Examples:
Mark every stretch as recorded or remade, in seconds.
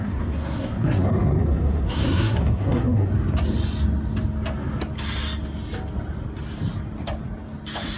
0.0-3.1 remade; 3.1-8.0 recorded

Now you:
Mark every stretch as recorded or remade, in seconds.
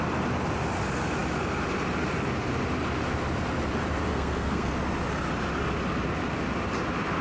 0.0-4.1 recorded; 4.1-4.7 remade; 4.7-7.2 recorded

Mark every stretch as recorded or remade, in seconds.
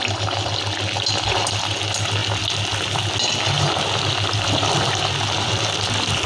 0.0-6.3 recorded